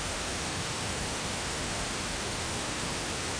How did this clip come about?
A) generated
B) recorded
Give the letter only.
A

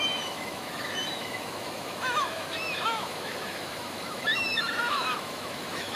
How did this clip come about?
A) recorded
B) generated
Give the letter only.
B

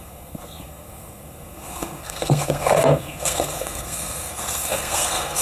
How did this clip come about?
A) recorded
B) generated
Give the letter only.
B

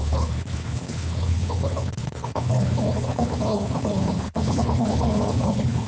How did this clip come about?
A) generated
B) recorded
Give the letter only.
A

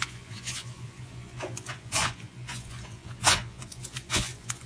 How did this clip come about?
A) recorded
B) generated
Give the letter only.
B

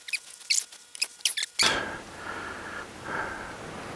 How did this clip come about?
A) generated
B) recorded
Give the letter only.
B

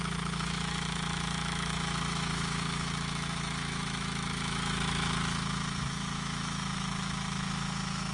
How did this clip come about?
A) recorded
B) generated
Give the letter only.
B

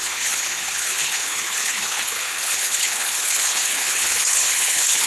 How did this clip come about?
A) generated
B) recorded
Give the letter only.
A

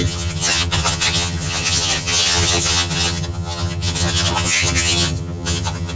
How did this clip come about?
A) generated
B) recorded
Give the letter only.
A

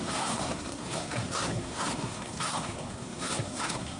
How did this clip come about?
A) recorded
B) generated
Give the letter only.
B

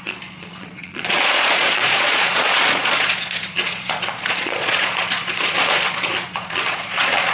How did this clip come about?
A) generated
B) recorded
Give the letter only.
A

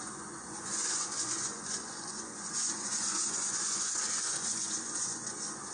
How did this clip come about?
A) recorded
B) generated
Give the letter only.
B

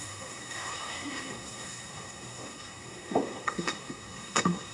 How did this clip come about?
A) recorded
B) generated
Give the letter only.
B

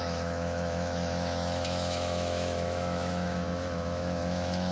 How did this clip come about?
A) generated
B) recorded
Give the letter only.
A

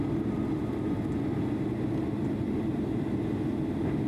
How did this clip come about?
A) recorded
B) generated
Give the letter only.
A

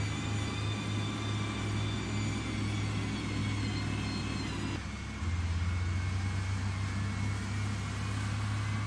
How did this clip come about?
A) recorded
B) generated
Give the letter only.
A